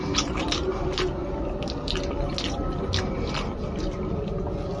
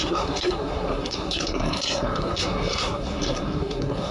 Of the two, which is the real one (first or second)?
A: first